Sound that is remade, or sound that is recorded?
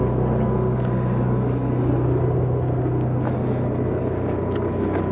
recorded